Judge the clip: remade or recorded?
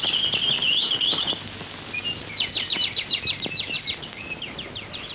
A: recorded